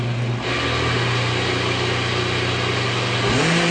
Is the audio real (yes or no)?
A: yes